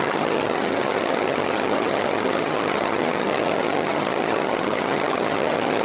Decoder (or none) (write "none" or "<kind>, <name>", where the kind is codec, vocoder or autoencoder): vocoder, HiFi-GAN